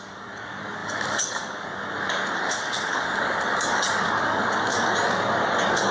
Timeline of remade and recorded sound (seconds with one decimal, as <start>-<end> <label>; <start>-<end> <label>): 0.0-5.9 remade